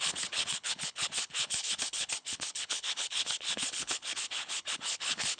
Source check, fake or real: fake